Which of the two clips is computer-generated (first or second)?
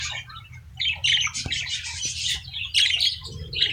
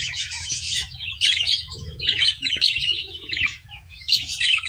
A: second